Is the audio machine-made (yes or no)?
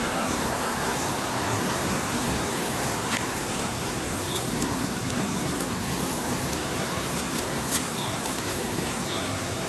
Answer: yes